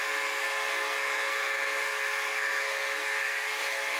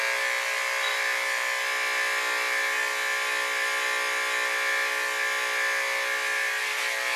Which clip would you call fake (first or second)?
first